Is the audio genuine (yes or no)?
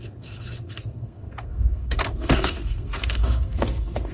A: no